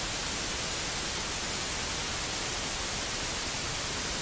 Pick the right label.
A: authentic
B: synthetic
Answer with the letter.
A